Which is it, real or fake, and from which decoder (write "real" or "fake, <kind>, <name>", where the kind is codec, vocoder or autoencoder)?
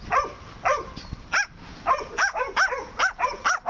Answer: real